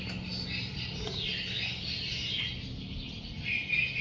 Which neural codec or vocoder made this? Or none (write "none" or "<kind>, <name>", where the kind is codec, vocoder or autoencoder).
none